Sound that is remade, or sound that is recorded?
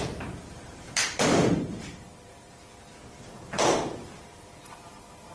remade